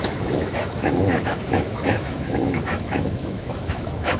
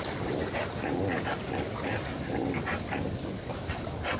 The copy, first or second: first